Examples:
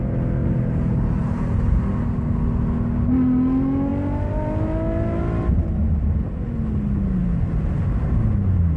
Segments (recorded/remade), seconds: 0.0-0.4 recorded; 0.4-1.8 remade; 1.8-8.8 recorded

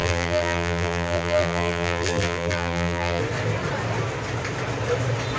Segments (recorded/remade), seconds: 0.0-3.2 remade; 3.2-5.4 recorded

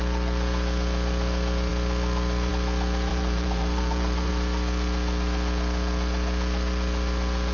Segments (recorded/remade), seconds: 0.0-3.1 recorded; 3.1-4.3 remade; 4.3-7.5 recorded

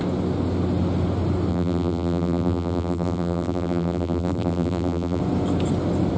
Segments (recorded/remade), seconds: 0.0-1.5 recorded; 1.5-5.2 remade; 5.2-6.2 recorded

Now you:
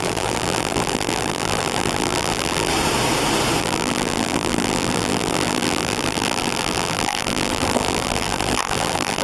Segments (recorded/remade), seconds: 0.0-2.7 remade; 2.7-3.6 recorded; 3.6-9.2 remade

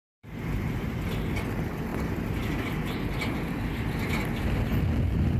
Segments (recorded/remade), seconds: 0.0-0.9 remade; 0.9-5.4 recorded

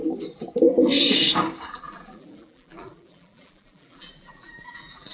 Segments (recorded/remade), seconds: 0.0-1.7 recorded; 1.7-5.1 remade